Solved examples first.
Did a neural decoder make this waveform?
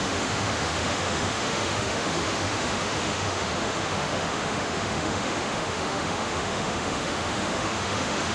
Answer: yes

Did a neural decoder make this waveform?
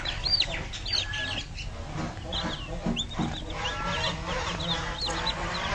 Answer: no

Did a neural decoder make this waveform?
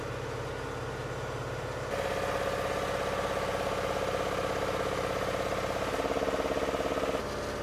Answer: no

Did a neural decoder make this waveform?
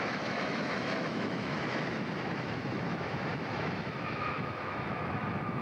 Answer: yes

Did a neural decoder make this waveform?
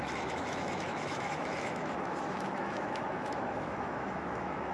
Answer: yes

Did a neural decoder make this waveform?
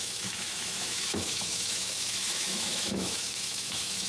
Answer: yes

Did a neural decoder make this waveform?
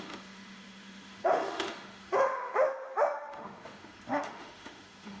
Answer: yes